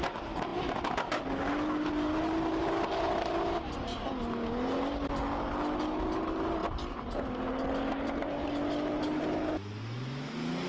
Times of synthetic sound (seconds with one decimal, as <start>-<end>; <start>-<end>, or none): none

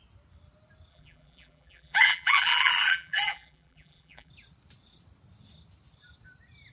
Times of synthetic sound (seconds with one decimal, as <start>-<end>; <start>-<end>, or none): 0.9-4.3

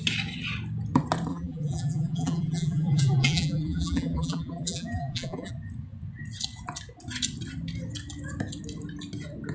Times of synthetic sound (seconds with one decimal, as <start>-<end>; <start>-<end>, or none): 1.3-5.5